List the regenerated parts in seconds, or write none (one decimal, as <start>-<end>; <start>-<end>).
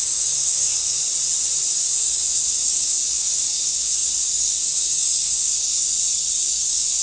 0.0-1.0; 1.7-7.0